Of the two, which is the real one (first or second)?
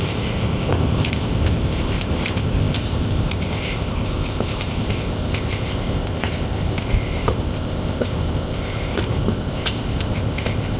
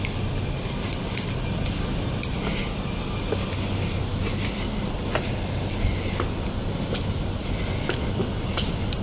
second